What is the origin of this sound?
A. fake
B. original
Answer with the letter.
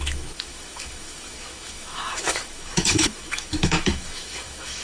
A